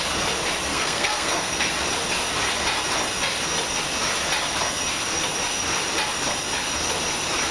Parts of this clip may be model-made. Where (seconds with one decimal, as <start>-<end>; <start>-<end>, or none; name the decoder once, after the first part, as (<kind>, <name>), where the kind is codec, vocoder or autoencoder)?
0.7-1.7 (codec, SNAC)